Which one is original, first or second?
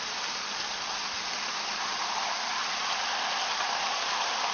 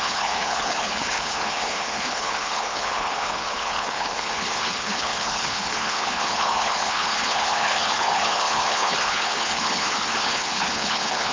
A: first